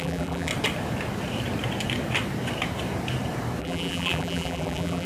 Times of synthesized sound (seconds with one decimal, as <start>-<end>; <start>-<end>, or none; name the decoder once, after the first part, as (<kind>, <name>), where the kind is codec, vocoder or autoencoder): 0.0-0.5 (vocoder, BigVGAN v2); 3.6-5.1